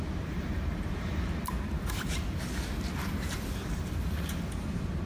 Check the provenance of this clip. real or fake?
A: fake